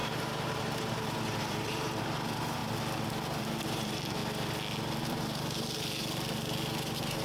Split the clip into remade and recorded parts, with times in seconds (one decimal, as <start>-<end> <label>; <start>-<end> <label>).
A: 0.0-2.6 remade; 2.6-3.4 recorded; 3.4-4.2 remade; 4.2-5.0 recorded; 5.0-7.2 remade